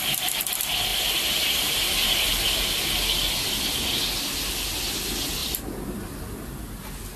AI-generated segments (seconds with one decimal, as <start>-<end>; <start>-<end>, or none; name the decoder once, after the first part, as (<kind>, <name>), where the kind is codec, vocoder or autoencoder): 0.9-2.3 (vocoder, BigVGAN v2); 5.4-6.0